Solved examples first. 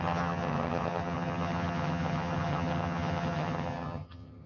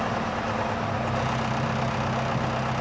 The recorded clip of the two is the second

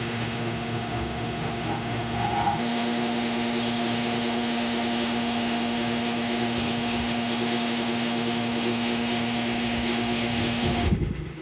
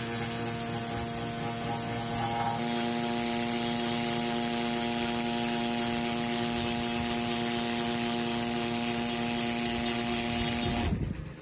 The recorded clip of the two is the second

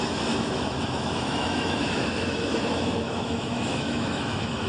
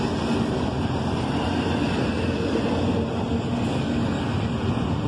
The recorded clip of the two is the second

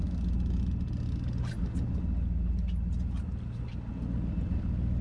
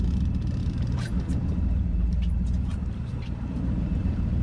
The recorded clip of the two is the first